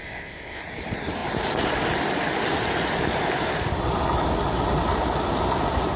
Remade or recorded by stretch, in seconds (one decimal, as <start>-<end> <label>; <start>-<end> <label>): 0.0-0.6 remade; 0.6-6.0 recorded